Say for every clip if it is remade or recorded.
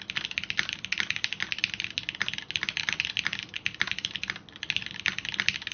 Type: recorded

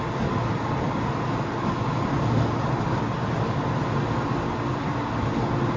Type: recorded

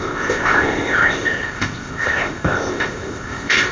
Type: remade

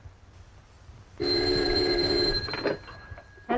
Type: recorded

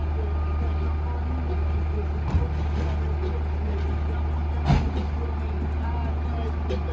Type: recorded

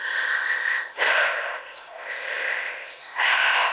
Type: remade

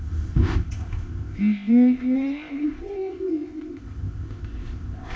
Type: remade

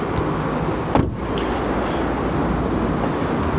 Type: recorded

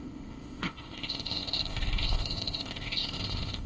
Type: remade